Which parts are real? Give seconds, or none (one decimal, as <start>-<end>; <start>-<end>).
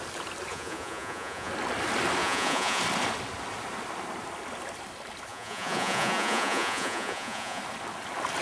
0.0-0.5; 1.5-2.2; 2.8-5.3; 7.6-8.4